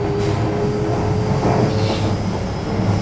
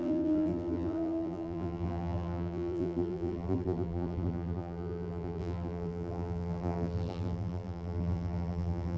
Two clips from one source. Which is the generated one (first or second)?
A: second